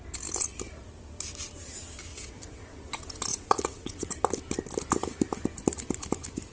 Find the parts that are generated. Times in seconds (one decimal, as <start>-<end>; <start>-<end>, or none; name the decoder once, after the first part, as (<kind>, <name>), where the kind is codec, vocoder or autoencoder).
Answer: 2.1-2.8 (vocoder, WaveNeXt); 3.3-4.1